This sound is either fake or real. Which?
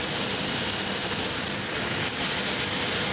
real